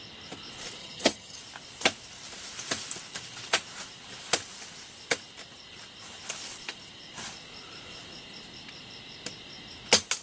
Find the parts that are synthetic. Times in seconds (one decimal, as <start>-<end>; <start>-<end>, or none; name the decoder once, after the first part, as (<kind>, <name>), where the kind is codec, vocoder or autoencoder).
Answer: 0.8-1.4 (vocoder, HiFi-GAN)